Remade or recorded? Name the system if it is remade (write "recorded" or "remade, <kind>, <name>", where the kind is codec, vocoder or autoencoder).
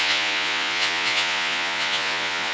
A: remade, vocoder, Vocos